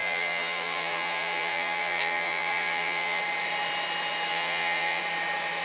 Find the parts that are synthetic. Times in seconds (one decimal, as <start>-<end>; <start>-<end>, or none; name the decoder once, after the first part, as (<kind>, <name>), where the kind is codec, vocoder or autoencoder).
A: 0.0-3.2 (vocoder, BigVGAN v2); 4.3-5.0